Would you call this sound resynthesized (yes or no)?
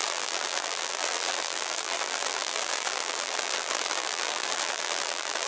yes